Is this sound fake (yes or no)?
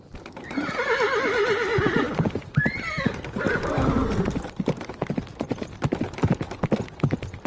no